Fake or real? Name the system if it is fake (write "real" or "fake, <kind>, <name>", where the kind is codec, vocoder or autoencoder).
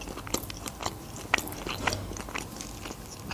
real